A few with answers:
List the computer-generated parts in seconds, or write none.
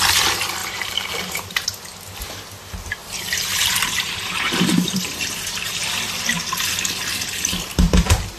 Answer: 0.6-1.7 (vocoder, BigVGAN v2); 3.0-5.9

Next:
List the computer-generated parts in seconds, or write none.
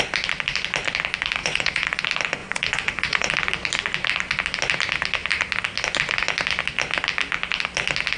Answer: 1.4-2.0 (vocoder, Vocos); 2.4-3.3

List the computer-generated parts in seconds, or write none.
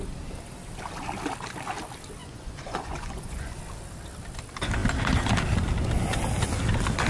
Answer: 2.2-3.6 (vocoder, Vocos)